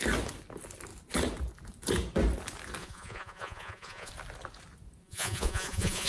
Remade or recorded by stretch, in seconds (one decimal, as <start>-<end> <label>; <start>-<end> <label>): 0.0-2.8 recorded; 2.8-4.1 remade; 4.1-5.0 recorded; 5.0-6.1 remade